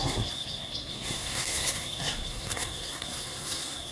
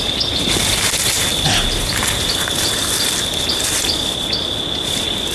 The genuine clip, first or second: second